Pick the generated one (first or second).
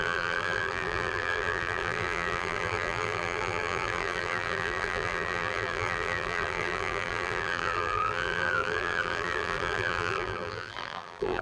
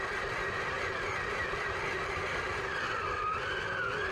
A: first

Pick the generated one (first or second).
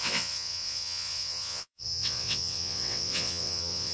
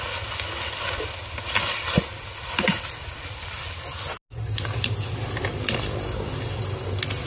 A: first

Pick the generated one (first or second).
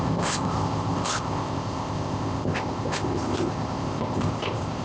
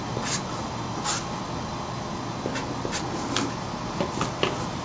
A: first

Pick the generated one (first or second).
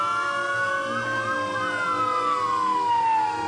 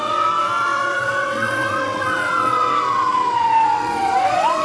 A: second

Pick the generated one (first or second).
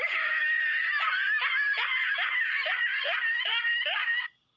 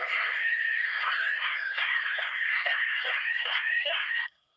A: second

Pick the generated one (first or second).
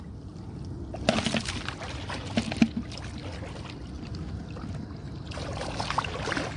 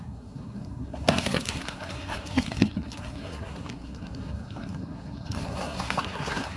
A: second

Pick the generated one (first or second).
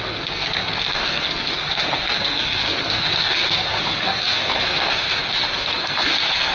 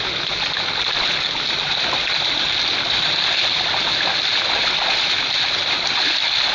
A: first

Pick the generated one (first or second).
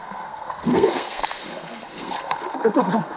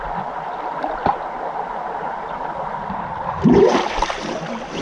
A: first